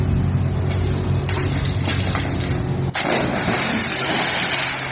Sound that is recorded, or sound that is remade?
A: recorded